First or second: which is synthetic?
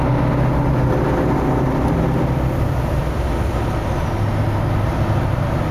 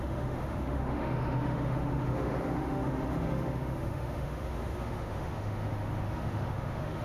second